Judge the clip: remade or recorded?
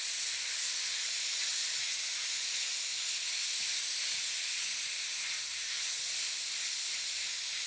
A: recorded